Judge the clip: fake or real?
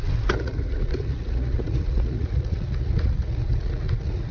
fake